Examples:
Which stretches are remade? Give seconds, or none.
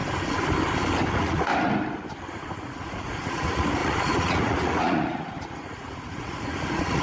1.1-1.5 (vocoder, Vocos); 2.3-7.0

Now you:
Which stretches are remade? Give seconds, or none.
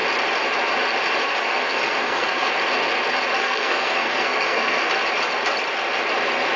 1.2-2.5 (codec, SNAC); 3.4-4.9